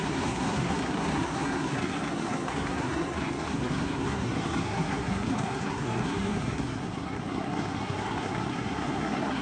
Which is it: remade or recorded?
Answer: remade